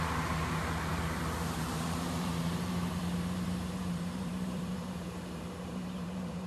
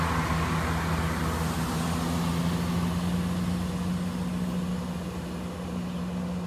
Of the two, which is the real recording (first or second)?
second